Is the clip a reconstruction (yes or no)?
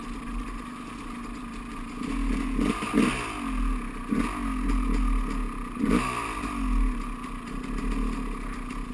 no